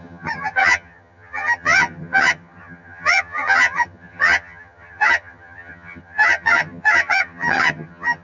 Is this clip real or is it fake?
fake